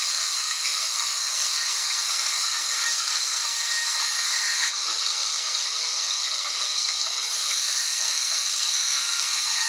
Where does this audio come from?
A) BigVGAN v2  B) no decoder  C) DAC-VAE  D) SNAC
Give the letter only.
D